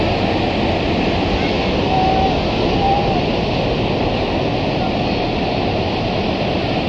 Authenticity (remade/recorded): recorded